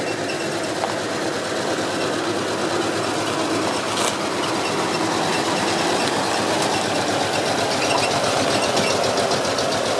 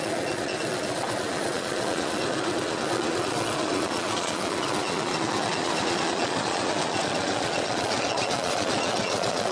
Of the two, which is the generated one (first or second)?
second